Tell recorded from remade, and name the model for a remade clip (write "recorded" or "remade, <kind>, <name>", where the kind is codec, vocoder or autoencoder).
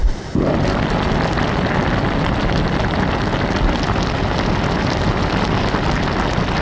recorded